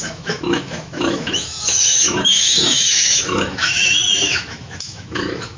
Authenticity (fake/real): fake